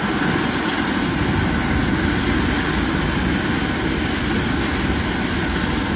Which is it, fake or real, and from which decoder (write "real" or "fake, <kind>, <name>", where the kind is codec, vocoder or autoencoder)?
real